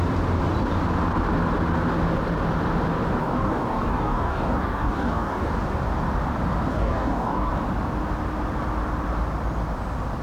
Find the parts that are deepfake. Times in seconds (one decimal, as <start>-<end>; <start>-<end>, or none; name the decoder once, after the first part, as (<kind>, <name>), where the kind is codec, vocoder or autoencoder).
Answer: 3.2-5.5 (codec, DAC); 6.7-7.5

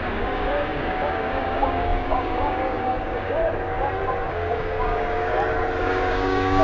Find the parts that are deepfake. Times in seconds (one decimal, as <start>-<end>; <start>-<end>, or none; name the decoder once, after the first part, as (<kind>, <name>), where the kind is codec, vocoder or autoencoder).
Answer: 0.0-3.4 (codec, DAC); 4.3-5.3; 5.8-6.6

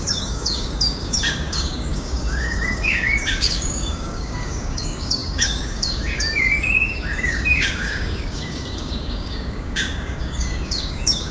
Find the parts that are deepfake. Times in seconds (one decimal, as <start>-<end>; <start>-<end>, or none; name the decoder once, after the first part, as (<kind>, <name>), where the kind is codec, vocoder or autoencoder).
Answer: 0.0-11.3 (codec, DAC)

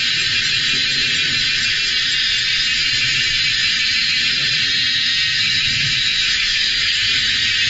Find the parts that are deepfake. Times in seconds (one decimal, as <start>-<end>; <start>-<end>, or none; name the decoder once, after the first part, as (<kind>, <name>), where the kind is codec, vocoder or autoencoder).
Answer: 6.4-7.0 (codec, DAC)